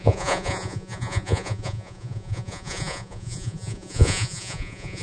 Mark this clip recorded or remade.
remade